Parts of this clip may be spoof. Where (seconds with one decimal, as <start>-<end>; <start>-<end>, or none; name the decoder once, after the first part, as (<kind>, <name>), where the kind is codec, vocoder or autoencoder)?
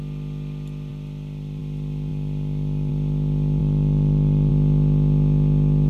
3.6-4.5 (vocoder, BigVGAN v2)